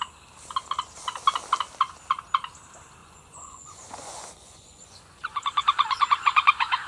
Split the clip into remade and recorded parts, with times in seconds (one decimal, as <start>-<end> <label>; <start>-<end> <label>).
0.0-3.0 recorded; 3.0-6.9 remade